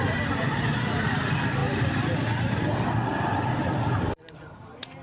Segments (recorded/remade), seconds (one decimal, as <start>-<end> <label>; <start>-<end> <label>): 0.0-5.0 recorded